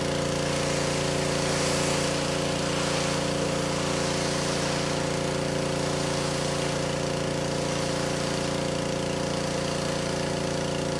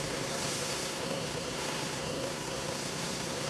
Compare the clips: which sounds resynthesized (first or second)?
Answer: second